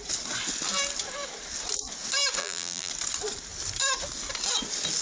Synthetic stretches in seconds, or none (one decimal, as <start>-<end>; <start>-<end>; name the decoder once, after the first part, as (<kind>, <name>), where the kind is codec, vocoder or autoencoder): 2.4-2.9 (vocoder, BigVGAN v2)